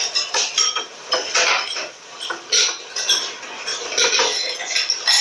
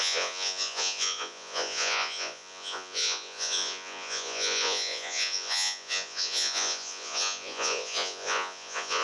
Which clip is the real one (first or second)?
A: first